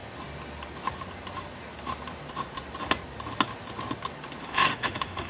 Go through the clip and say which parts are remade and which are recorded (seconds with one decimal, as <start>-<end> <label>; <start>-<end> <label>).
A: 0.0-4.4 recorded; 4.4-5.3 remade